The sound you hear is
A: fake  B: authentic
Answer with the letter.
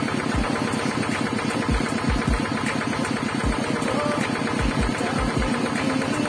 B